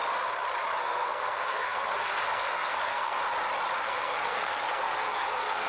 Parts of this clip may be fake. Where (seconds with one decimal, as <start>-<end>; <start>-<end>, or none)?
0.8-3.2; 3.8-5.7